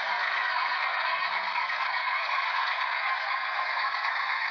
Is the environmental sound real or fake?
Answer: fake